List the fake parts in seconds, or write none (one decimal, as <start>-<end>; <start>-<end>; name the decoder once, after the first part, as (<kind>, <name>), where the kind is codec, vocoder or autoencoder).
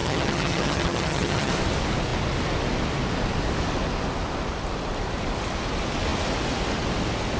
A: 0.0-1.5 (vocoder, HiFi-GAN)